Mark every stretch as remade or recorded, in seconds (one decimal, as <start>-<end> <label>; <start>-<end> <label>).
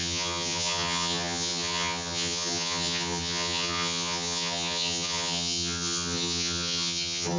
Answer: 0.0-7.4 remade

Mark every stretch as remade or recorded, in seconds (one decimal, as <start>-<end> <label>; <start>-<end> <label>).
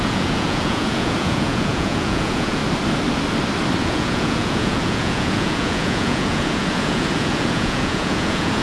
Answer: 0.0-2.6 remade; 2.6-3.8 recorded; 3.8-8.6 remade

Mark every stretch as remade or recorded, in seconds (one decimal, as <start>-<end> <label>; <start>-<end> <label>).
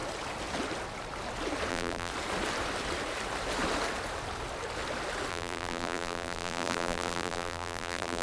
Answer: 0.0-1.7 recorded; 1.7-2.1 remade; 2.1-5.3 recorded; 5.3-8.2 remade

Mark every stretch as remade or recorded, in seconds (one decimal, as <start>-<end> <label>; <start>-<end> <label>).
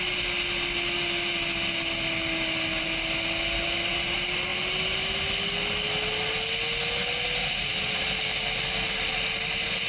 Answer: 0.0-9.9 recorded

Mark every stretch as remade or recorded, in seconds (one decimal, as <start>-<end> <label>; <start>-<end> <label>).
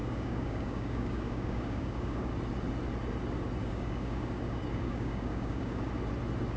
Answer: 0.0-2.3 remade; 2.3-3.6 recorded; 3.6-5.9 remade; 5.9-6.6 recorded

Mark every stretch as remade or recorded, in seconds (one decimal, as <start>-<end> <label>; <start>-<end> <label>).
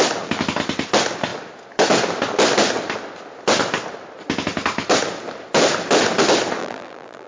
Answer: 0.0-6.6 recorded; 6.6-7.3 remade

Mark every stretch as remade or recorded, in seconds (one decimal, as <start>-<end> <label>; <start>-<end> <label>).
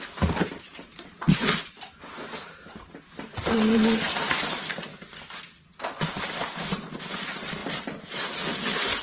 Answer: 0.0-4.9 remade; 4.9-6.1 recorded; 6.1-9.0 remade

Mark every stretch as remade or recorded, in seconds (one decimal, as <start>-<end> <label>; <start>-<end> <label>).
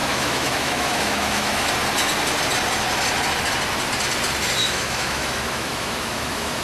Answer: 0.0-1.7 remade; 1.7-4.6 recorded; 4.6-6.6 remade